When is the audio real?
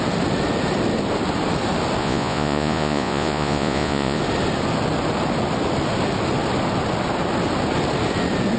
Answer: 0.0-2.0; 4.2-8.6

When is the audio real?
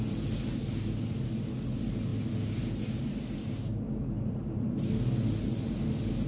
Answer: 0.0-6.3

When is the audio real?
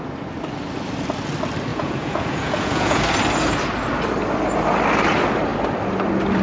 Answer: 0.0-1.7; 3.0-6.4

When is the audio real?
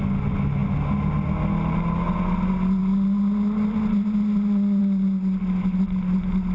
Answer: 0.0-6.5